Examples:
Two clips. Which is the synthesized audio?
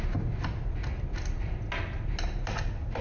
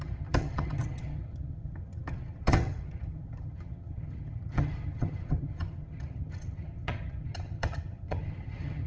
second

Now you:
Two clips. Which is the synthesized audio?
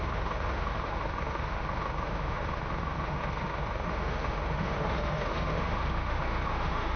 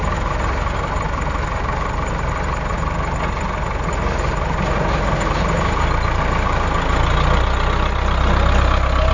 first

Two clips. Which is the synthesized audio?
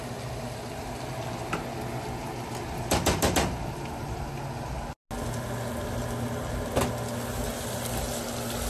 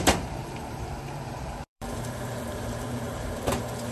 second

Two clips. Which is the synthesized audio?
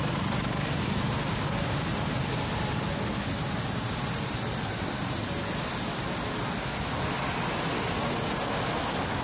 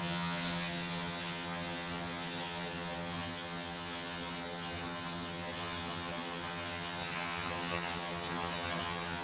second